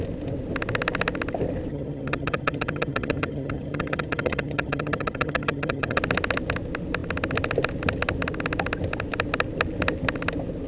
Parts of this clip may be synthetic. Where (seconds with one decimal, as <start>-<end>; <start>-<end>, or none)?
1.7-6.0